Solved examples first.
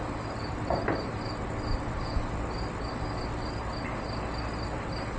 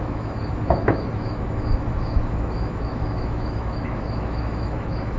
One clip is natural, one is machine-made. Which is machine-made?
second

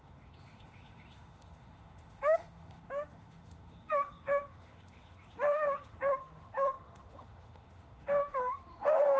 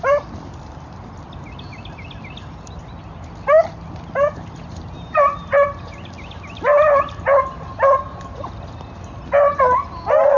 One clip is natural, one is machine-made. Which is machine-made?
first